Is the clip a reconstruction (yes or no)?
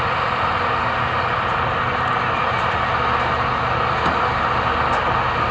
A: no